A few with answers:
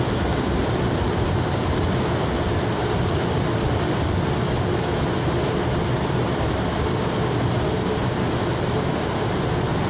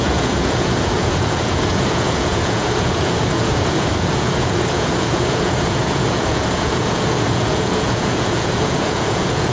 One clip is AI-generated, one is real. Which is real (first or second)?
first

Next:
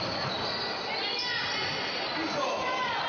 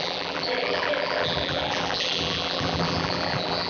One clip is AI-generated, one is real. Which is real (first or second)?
first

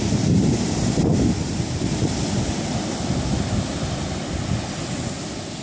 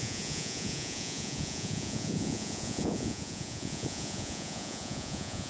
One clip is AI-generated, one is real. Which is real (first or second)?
first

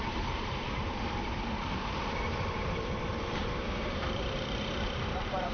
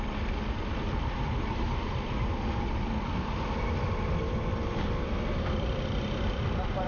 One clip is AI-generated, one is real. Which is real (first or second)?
second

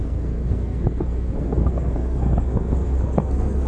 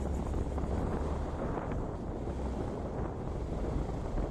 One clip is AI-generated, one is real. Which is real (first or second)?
second